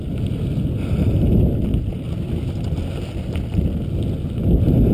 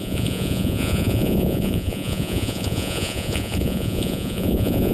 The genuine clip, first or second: first